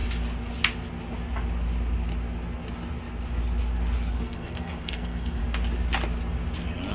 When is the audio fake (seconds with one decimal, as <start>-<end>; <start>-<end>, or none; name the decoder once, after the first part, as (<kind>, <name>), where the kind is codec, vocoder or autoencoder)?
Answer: 4.1-5.4 (codec, SNAC)